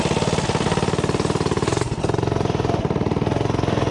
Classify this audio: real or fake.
real